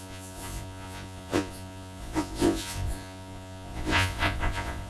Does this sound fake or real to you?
fake